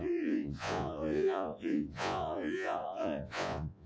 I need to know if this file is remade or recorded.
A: remade